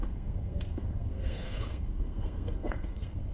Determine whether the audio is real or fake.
fake